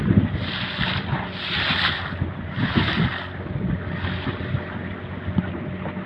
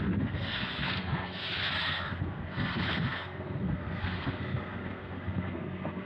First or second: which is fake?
second